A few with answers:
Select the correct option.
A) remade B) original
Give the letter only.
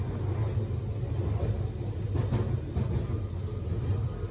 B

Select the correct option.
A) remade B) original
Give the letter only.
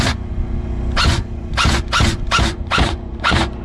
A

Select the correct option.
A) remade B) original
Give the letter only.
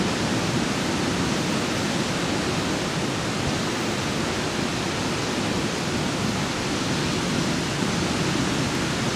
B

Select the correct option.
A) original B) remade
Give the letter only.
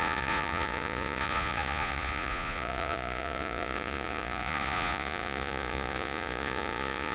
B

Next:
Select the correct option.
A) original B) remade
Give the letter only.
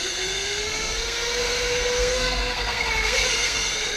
B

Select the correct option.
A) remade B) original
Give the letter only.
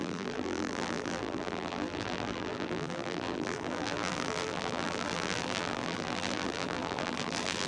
A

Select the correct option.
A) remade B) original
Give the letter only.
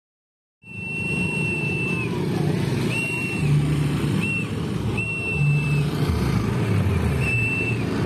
B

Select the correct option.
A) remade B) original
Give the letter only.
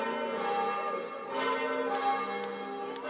B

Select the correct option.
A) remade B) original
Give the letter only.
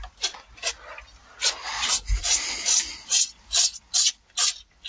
B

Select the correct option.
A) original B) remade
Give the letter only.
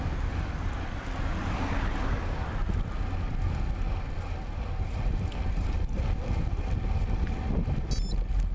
A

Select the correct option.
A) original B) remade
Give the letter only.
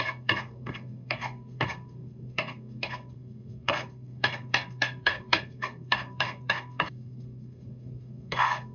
B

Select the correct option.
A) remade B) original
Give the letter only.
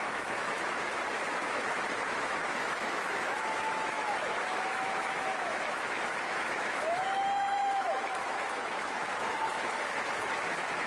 A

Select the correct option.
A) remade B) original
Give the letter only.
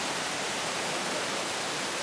B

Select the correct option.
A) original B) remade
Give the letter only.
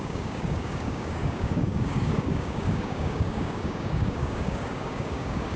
B